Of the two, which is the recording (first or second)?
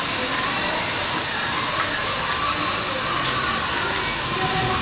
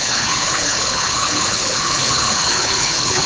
first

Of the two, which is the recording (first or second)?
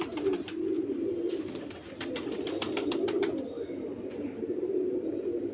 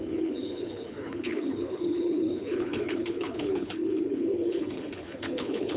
first